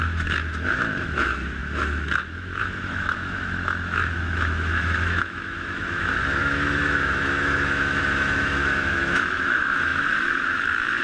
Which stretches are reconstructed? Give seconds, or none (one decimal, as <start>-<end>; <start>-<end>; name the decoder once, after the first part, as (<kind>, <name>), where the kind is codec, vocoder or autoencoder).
0.0-11.0 (autoencoder, DAC-VAE)